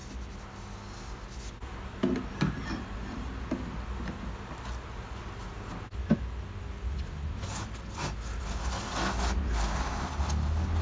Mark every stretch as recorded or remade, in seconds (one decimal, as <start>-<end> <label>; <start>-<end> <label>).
0.0-10.8 recorded

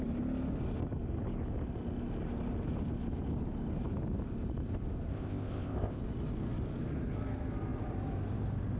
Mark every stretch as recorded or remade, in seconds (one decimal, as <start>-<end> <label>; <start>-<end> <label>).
0.0-5.1 recorded; 5.1-6.0 remade; 6.0-8.8 recorded